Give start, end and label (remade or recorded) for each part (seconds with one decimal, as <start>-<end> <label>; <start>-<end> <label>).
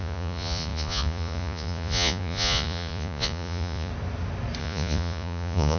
0.0-3.9 remade; 3.9-4.6 recorded; 4.6-5.8 remade